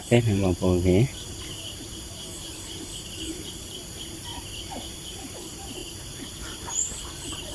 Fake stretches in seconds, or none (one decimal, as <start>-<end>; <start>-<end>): 0.0-4.3; 4.9-7.5